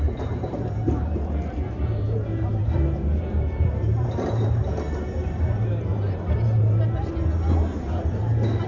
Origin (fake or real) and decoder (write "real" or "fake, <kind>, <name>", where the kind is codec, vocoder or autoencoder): fake, vocoder, BigVGAN v2